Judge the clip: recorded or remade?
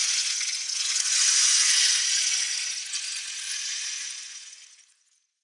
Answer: remade